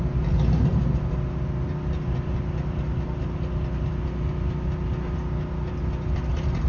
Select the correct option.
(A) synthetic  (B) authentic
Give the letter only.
B